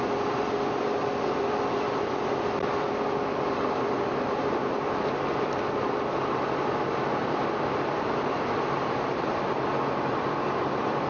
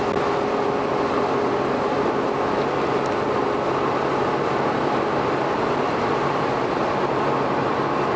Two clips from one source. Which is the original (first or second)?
second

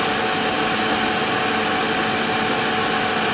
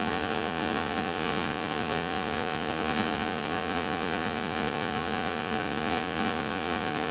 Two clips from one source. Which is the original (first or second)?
first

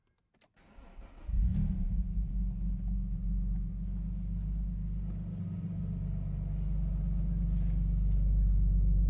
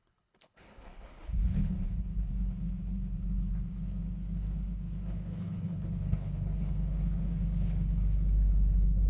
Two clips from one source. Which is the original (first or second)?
first